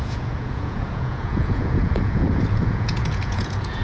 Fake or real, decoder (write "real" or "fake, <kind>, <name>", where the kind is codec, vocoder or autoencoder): fake, vocoder, Vocos